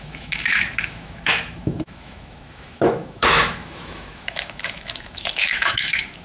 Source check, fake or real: fake